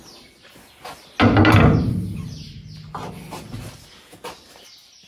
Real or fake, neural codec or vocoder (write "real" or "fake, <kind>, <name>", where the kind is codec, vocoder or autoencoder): real